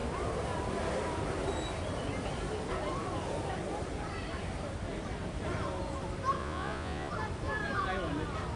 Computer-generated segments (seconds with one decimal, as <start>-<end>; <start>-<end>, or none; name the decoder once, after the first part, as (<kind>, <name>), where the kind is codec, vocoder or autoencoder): 6.4-7.1 (vocoder, Vocos)